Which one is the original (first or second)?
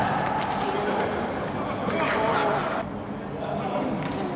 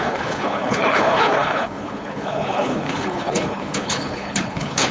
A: first